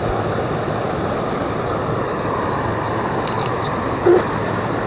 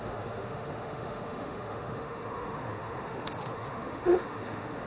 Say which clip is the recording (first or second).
first